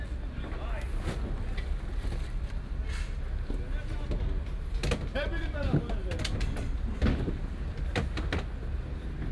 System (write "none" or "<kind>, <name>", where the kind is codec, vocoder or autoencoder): none